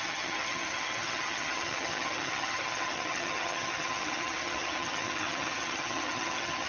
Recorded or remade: remade